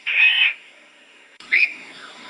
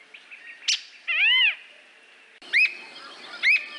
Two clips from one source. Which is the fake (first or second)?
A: first